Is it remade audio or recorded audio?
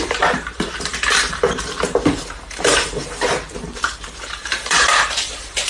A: remade